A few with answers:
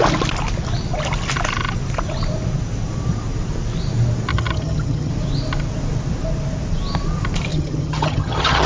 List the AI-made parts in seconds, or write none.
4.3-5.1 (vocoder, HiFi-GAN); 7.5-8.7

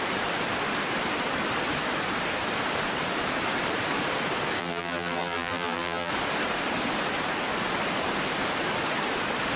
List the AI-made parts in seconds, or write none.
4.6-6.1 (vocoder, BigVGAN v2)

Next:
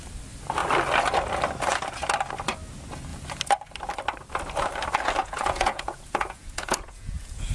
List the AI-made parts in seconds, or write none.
5.2-7.5 (vocoder, Vocos)